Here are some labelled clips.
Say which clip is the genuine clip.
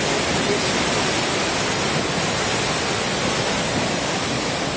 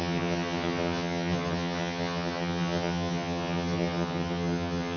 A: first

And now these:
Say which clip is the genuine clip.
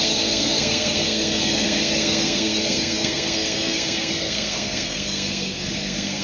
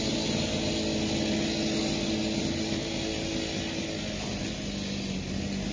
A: second